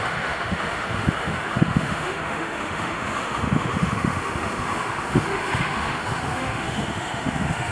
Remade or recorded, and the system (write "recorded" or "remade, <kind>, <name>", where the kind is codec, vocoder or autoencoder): remade, autoencoder, DAC-VAE